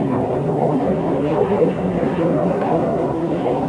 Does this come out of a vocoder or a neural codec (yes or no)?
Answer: yes